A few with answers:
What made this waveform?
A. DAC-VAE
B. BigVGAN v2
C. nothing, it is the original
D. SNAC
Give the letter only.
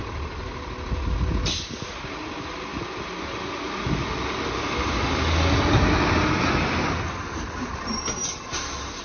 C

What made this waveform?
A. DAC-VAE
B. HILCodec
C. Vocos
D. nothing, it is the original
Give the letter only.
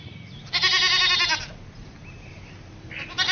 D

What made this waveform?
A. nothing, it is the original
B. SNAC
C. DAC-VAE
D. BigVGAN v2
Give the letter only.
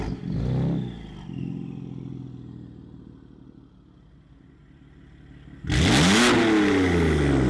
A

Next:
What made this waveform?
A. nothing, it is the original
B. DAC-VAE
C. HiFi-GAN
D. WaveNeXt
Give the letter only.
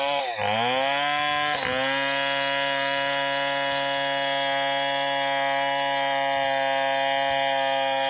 A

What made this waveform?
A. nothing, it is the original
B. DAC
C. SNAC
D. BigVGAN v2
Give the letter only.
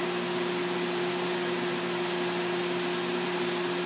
A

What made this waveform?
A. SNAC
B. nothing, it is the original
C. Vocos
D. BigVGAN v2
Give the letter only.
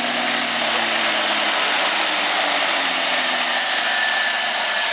B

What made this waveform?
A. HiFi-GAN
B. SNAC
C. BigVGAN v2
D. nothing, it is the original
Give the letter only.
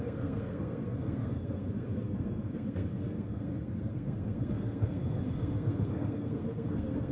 B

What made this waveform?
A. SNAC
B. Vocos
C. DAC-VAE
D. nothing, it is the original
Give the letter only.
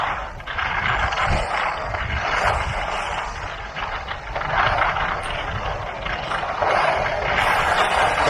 D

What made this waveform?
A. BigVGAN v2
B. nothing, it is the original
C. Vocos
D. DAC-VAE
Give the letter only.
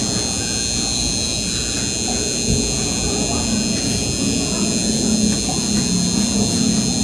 B